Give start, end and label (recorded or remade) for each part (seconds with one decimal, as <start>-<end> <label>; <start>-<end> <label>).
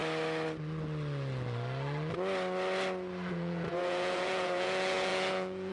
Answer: 0.0-3.3 recorded; 3.3-5.7 remade